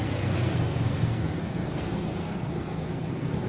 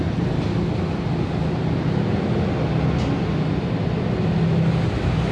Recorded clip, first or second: second